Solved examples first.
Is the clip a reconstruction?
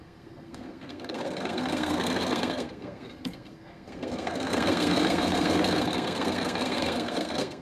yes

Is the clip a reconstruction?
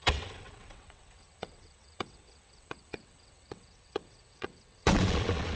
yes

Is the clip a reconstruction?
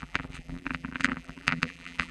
yes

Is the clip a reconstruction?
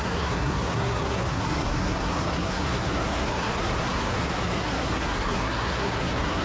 yes